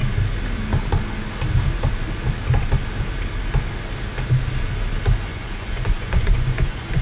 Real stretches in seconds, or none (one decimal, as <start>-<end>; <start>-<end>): 0.0-5.3